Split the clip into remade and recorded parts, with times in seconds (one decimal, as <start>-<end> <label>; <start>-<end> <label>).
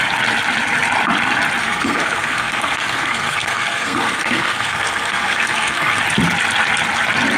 0.0-1.6 recorded; 1.6-6.0 remade; 6.0-7.4 recorded